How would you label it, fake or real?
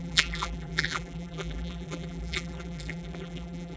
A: fake